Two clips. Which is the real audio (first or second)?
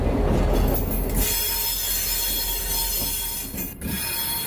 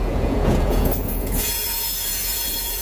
first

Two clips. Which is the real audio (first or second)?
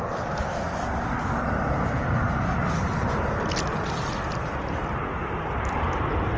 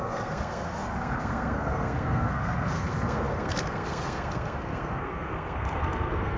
first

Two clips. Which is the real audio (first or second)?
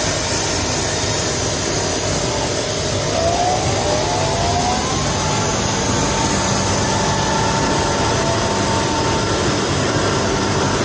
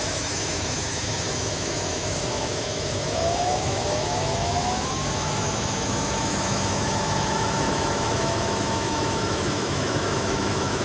first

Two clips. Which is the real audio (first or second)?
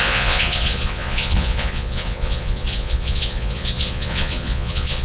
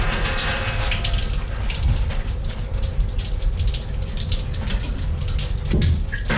second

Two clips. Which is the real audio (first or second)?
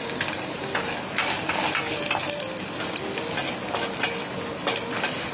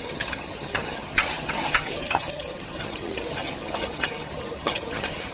first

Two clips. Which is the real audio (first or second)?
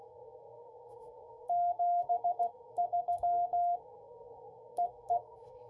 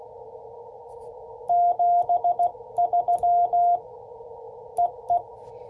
second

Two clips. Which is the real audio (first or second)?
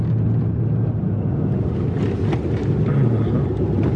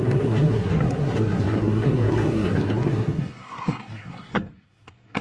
first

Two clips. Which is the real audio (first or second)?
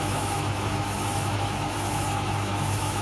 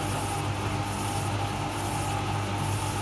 second